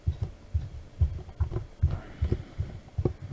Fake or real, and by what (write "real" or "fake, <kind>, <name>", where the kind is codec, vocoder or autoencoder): real